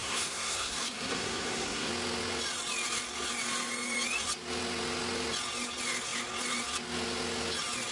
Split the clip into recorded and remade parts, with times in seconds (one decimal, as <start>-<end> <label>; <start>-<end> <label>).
0.0-1.9 remade; 1.9-7.9 recorded